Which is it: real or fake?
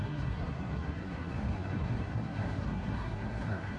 fake